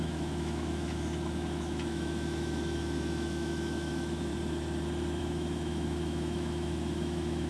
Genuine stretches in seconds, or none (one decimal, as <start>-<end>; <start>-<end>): 4.3-5.2